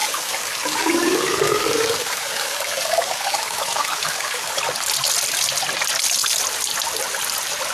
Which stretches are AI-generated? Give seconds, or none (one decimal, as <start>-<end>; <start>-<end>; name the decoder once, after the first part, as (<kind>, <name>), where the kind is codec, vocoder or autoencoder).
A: 0.0-4.6 (codec, DAC)

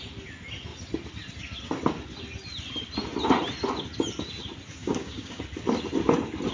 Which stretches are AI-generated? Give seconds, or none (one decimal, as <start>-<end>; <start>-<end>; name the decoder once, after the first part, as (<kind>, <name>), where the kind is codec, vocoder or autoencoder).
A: 4.8-5.4 (codec, DAC)

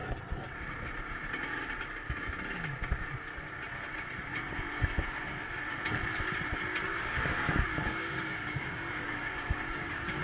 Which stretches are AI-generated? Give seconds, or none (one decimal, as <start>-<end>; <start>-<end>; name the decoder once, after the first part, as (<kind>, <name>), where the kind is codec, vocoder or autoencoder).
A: 6.9-10.2 (codec, DAC)

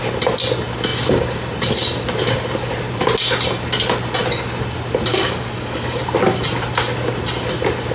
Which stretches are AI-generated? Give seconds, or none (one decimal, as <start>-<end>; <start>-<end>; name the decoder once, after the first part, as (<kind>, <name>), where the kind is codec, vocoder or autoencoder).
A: 5.1-6.0 (codec, DAC)